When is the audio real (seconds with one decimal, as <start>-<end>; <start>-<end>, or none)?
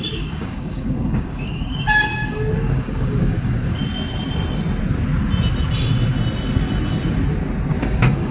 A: 3.8-7.8